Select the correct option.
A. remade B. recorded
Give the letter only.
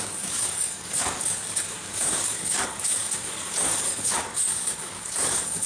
A